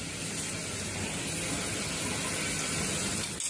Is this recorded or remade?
recorded